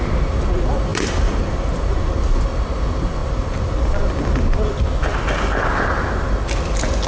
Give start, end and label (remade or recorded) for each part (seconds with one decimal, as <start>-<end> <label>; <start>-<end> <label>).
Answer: 0.0-0.9 recorded; 0.9-2.2 remade; 2.2-3.2 recorded; 3.2-3.8 remade; 3.8-7.1 recorded